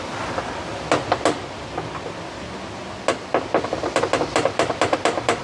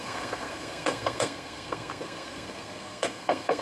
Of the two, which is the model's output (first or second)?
second